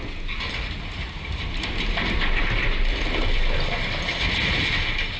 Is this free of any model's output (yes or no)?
yes